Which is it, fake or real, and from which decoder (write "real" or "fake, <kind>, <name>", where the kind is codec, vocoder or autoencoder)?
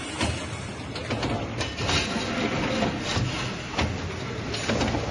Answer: real